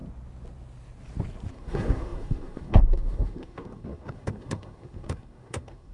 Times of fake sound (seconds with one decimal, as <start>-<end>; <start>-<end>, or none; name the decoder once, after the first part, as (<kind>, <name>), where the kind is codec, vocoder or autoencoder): 1.5-5.9 (codec, SNAC)